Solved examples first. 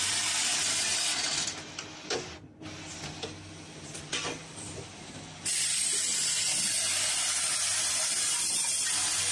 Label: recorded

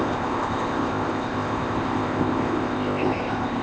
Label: remade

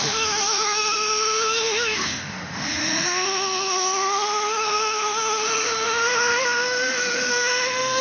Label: remade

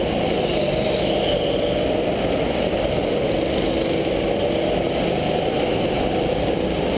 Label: recorded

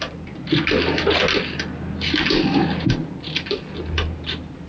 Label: recorded